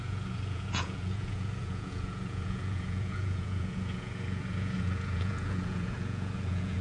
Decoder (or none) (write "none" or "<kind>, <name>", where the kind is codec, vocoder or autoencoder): vocoder, Vocos